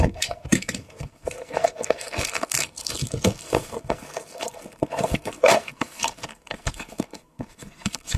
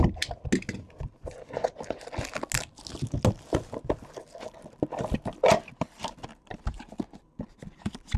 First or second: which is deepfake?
first